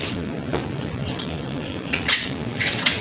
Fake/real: fake